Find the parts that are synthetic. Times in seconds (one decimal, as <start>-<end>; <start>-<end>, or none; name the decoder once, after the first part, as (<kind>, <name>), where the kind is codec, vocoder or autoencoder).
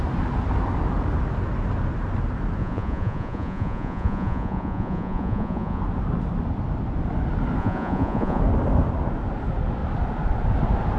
2.6-5.8 (vocoder, Vocos); 7.6-8.4